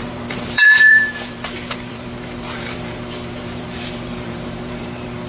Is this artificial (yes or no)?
yes